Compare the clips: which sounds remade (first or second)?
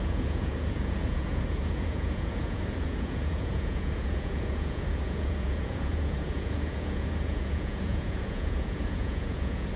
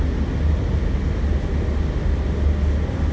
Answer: first